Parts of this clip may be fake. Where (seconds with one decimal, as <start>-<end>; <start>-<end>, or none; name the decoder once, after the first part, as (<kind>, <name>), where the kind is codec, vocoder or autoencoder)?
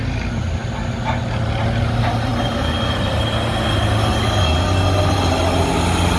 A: none